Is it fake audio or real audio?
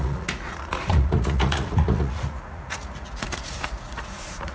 fake